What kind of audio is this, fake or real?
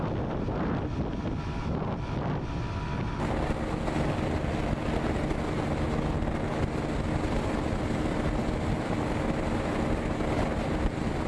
real